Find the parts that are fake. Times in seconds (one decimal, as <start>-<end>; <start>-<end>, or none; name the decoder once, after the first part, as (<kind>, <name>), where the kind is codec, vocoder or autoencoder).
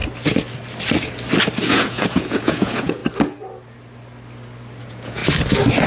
1.6-3.0 (vocoder, Vocos); 4.8-5.2